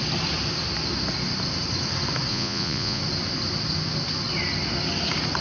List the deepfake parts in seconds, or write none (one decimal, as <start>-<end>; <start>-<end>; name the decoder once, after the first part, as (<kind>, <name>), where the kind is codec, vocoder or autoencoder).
2.3-3.0 (vocoder, Vocos)